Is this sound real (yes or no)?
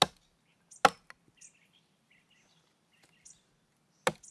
yes